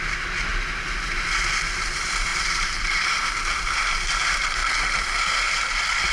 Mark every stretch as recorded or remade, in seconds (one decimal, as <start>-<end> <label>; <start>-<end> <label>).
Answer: 0.0-0.5 remade; 0.5-1.7 recorded; 1.7-4.6 remade; 4.6-6.1 recorded